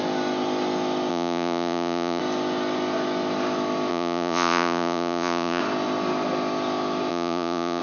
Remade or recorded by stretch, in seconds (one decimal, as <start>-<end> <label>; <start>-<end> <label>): 0.0-1.1 recorded; 1.1-2.2 remade; 2.2-3.9 recorded; 3.9-5.6 remade; 5.6-7.1 recorded; 7.1-7.8 remade